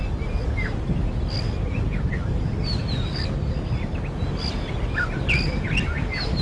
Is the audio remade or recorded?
recorded